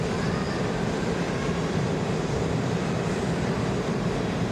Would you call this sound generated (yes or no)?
no